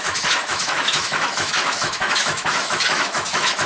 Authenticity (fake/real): fake